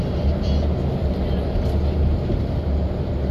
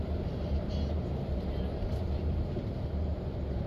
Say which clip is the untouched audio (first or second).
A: first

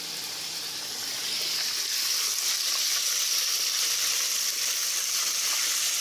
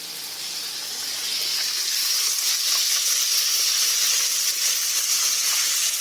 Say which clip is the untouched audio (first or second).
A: second